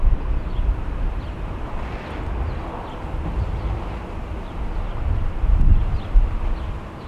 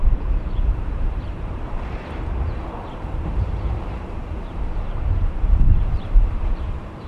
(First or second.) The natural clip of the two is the first